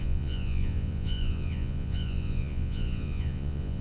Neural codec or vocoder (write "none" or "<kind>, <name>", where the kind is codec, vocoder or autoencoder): vocoder, Vocos